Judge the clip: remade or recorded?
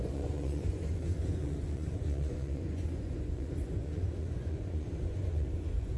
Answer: remade